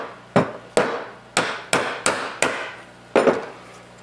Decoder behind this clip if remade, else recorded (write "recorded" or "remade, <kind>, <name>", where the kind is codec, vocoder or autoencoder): recorded